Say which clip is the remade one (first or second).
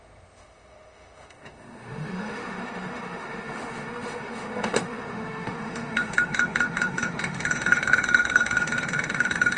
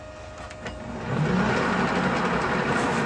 first